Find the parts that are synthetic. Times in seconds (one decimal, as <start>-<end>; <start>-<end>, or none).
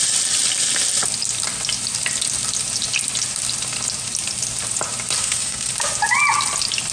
5.2-5.7